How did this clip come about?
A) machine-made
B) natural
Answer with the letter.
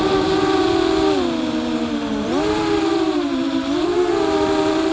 A